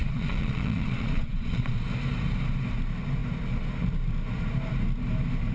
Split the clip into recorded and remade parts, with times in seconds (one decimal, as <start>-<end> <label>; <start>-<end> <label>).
0.0-1.8 remade; 1.8-5.5 recorded